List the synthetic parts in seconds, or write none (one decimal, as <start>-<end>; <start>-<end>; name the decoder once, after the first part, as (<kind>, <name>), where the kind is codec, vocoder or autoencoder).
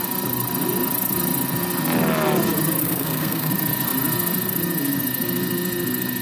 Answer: 2.8-3.5 (codec, SNAC)